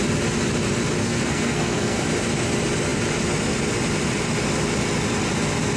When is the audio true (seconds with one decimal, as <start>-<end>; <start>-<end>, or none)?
0.0-1.0; 2.0-5.8